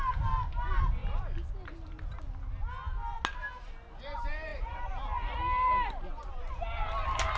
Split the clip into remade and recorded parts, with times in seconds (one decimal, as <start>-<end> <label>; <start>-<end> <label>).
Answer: 0.0-1.0 recorded; 1.0-2.5 remade; 2.5-4.5 recorded; 4.5-6.5 remade; 6.5-7.4 recorded